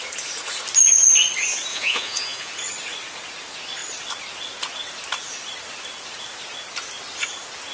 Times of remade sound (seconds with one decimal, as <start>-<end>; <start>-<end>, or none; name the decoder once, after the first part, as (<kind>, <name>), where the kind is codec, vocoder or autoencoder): 1.7-2.5 (vocoder, Vocos)